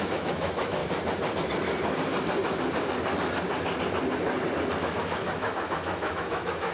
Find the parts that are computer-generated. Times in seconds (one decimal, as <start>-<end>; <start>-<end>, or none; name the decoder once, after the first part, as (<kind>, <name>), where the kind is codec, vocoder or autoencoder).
0.0-0.8 (autoencoder, DAC-VAE); 4.8-6.7